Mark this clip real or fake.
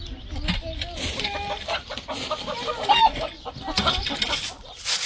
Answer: real